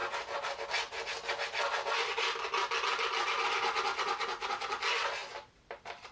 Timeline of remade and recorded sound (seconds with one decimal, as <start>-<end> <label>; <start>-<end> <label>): 0.0-6.1 recorded